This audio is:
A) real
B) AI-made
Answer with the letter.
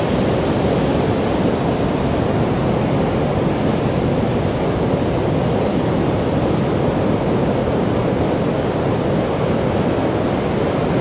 A